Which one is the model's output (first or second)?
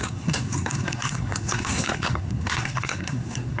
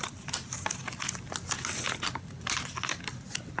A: first